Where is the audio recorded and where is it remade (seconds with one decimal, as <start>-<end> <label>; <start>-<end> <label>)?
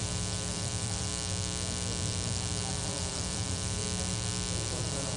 0.0-1.1 remade; 1.1-2.7 recorded; 2.7-3.8 remade; 3.8-4.7 recorded; 4.7-5.2 remade